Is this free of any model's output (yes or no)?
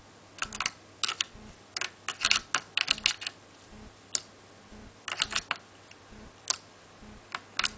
yes